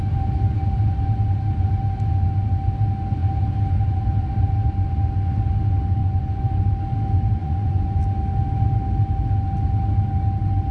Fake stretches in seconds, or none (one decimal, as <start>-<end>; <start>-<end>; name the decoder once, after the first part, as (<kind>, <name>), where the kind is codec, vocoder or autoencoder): 6.0-6.8 (vocoder, Vocos); 7.4-8.0